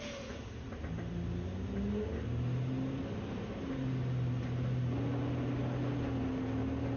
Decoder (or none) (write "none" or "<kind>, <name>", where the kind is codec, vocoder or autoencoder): none